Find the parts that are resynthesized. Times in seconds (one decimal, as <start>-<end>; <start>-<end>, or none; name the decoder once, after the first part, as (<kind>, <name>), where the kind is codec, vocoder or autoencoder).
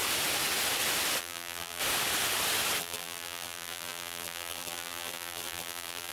1.2-1.8 (vocoder, BigVGAN v2); 2.8-6.1